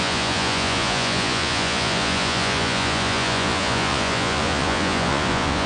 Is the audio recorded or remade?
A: remade